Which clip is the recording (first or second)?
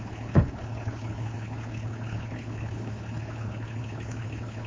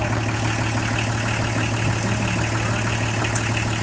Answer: second